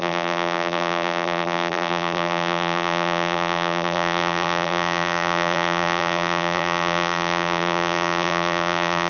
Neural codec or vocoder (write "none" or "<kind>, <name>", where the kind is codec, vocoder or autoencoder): vocoder, BigVGAN v2